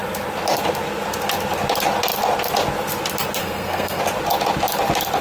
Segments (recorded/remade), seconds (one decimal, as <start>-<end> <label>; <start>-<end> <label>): 0.0-3.4 recorded; 3.4-4.0 remade; 4.0-5.2 recorded